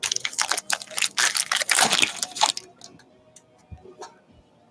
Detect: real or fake real